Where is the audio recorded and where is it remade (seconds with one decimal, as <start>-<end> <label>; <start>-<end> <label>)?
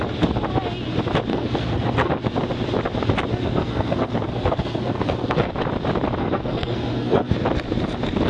0.0-1.3 recorded; 1.3-2.1 remade; 2.1-3.3 recorded; 3.3-5.5 remade; 5.5-6.2 recorded; 6.2-7.3 remade; 7.3-8.3 recorded